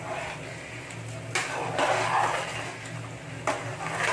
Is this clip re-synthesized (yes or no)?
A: no